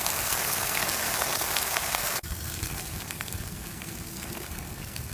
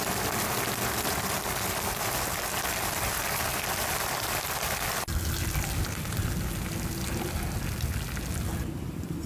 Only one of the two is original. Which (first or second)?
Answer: second